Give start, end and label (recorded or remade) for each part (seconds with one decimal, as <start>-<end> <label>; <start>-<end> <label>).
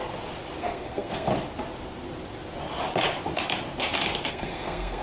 0.0-0.6 recorded; 0.6-1.3 remade; 1.3-4.3 recorded; 4.3-5.0 remade